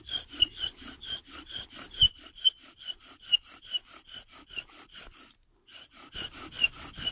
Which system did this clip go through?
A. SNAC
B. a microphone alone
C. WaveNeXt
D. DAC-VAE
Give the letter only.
B